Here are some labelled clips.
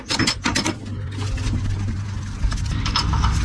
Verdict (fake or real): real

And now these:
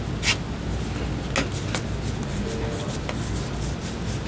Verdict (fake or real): real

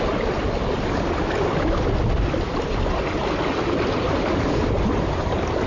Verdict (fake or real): real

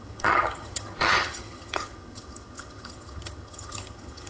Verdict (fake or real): fake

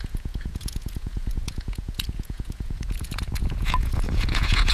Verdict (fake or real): fake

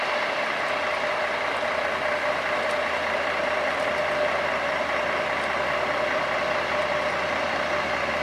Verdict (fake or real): real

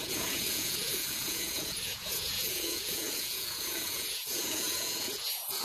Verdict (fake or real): fake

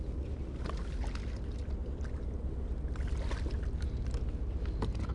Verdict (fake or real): real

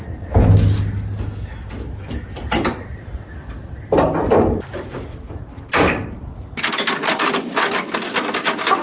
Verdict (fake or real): real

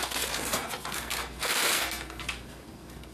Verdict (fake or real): fake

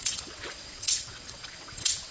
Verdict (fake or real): fake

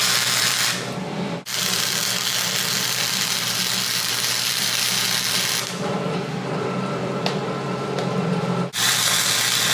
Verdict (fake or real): fake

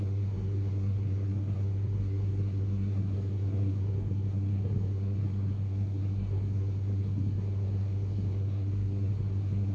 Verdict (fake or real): fake